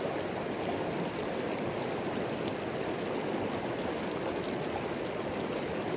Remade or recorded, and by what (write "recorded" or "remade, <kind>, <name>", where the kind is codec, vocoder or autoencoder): recorded